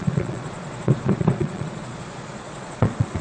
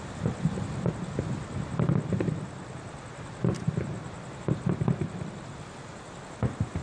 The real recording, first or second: second